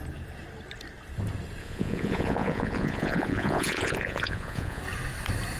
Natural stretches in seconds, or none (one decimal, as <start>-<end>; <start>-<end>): 0.0-1.6; 4.8-5.6